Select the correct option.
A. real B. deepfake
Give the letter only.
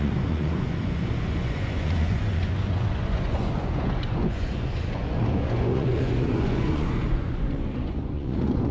B